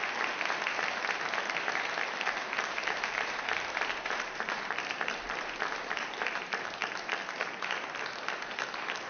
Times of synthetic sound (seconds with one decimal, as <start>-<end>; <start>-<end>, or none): 2.4-7.2